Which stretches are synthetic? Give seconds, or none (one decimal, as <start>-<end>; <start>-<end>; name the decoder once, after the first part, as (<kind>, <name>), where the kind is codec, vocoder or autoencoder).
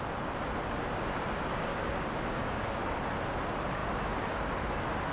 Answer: 1.7-2.8 (codec, DAC)